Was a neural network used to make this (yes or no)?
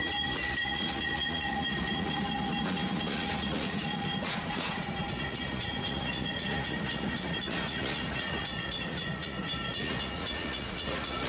yes